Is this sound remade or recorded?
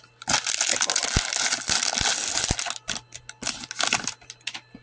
recorded